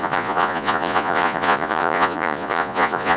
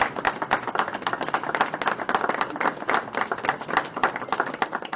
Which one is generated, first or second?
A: first